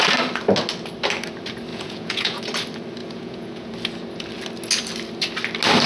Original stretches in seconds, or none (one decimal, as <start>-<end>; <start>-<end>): 0.0-1.7; 2.4-3.0; 3.7-5.9